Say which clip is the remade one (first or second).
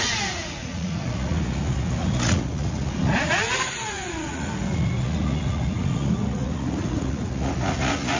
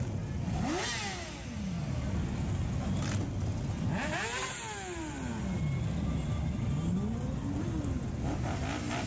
first